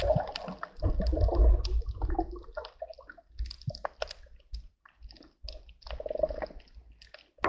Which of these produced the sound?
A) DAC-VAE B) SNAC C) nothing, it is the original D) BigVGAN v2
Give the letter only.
C